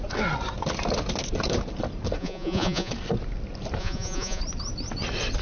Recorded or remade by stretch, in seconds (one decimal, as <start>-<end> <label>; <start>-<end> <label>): 0.0-2.2 recorded; 2.2-2.9 remade; 2.9-3.8 recorded; 3.8-4.4 remade; 4.4-5.4 recorded